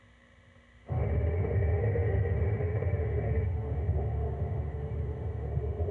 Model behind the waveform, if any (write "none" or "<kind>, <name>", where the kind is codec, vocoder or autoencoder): autoencoder, DAC-VAE